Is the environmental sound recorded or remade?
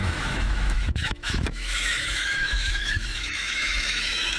remade